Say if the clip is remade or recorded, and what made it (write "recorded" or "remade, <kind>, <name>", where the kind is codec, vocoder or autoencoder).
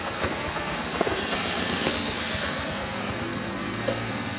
remade, codec, SNAC